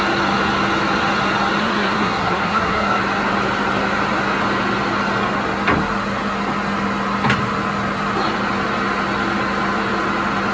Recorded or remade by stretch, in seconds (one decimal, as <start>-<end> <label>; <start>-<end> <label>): 0.0-1.6 recorded; 1.6-3.0 remade; 3.0-10.5 recorded